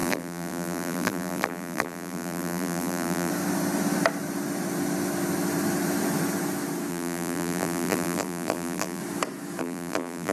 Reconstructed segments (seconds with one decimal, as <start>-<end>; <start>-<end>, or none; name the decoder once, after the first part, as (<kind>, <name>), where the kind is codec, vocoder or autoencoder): 0.0-3.3 (vocoder, BigVGAN v2); 6.9-9.0; 9.6-10.3